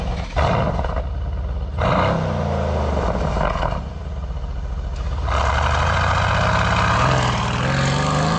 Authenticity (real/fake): real